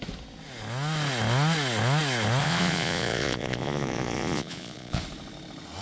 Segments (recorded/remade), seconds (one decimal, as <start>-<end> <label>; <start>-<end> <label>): 0.0-2.4 recorded; 2.4-5.0 remade; 5.0-5.8 recorded